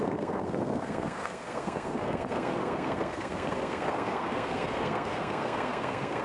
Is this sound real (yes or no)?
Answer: no